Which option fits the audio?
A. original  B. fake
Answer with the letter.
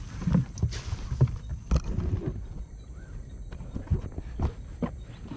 A